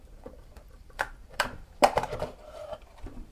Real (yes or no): no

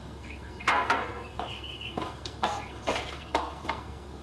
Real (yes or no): no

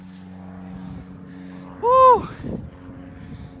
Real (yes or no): yes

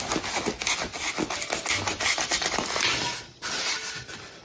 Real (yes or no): yes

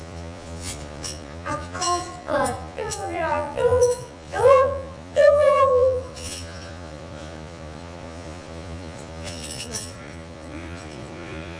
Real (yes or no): no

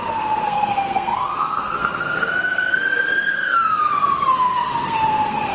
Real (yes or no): no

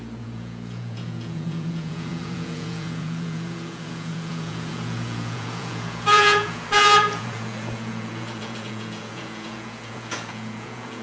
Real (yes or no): no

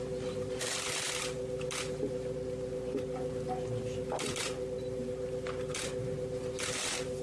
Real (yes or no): no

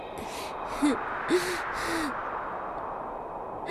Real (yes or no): yes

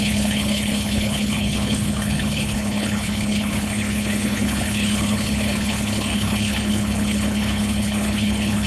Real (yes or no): no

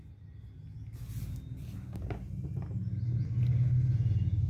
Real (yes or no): yes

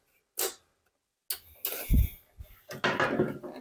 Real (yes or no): yes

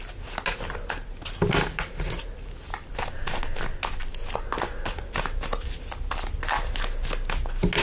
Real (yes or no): yes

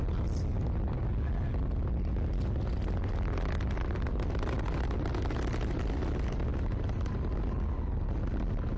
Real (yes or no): yes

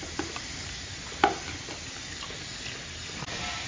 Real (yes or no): yes